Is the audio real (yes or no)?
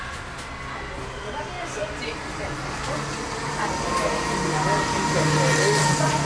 yes